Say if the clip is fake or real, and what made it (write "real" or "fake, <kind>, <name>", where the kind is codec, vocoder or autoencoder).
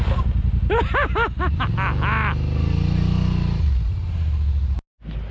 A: real